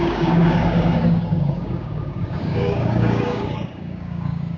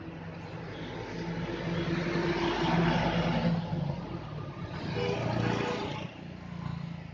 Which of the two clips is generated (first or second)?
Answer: first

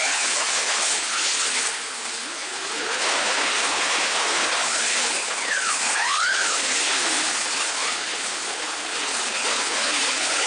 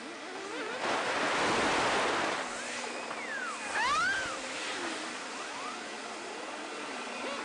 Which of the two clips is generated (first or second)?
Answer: first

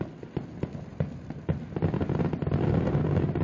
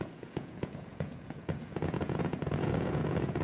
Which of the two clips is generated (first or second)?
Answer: second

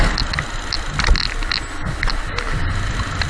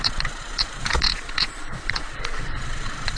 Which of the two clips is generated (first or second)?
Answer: second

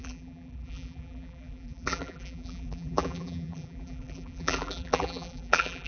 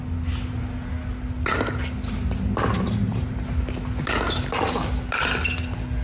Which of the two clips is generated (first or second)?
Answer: first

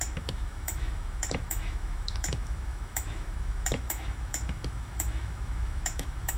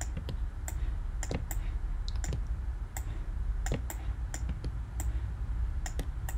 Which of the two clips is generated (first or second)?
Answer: first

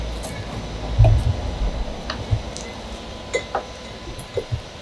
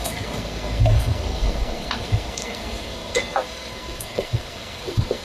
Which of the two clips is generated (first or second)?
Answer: second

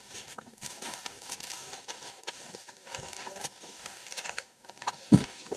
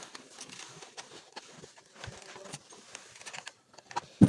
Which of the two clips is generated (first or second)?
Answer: first